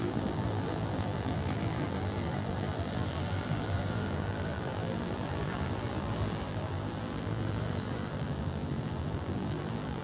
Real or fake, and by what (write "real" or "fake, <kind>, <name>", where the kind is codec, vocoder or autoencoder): fake, vocoder, BigVGAN v2